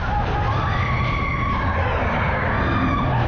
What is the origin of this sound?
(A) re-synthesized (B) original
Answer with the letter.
B